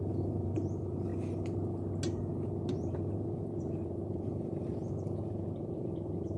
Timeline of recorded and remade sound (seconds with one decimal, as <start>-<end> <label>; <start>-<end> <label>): 0.0-1.1 remade; 1.1-2.7 recorded; 2.7-6.4 remade